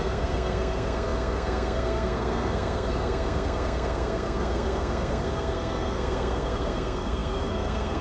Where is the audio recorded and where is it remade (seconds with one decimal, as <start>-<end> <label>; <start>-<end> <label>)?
0.0-8.0 remade